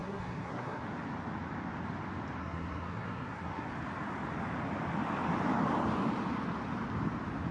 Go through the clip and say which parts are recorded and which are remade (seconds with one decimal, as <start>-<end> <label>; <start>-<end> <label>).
0.0-0.8 remade; 0.8-2.4 recorded; 2.4-3.7 remade; 3.7-7.5 recorded